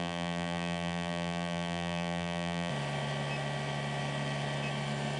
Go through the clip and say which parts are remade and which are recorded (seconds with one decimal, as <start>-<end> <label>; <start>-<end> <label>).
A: 0.0-2.7 remade; 2.7-5.2 recorded